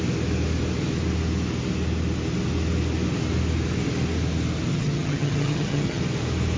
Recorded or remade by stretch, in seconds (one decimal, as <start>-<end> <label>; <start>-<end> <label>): 0.0-4.7 recorded; 4.7-6.0 remade; 6.0-6.6 recorded